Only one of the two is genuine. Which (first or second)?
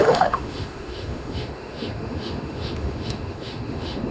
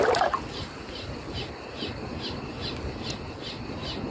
second